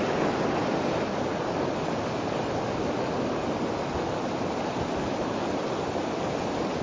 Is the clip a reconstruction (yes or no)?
no